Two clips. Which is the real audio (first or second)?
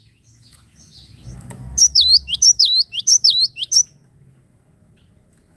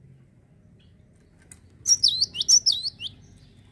second